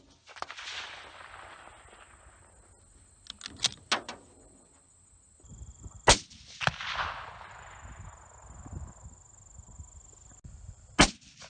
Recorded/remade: recorded